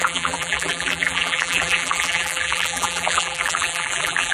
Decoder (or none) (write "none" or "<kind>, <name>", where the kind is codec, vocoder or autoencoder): vocoder, BigVGAN v2